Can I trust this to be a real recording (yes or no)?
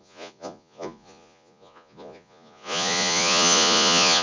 no